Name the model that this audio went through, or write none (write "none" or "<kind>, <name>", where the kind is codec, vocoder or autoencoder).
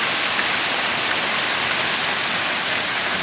none